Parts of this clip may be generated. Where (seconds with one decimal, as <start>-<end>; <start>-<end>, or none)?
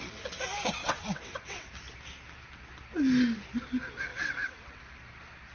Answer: 0.8-1.7; 4.1-4.8